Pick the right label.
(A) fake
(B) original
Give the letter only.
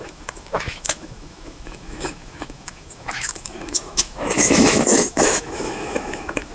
A